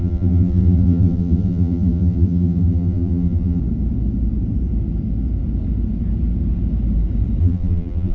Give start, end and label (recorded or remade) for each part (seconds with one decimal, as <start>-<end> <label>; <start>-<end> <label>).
0.0-3.6 remade; 3.6-7.4 recorded; 7.4-8.1 remade